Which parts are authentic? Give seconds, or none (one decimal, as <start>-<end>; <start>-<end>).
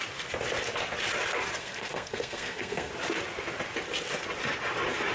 0.0-1.6; 2.9-5.1